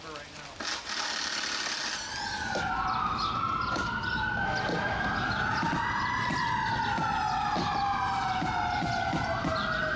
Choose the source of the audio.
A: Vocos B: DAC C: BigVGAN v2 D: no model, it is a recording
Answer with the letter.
D